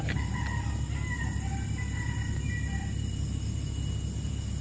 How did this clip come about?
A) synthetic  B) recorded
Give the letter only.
B